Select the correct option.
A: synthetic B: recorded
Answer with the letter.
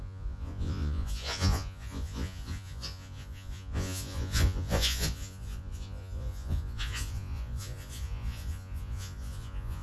A